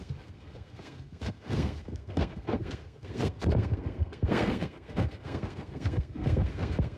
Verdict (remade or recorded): remade